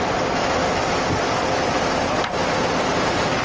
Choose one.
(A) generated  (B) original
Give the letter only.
B